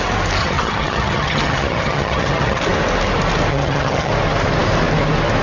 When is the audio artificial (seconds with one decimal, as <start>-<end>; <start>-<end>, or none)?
0.4-2.6; 3.5-4.1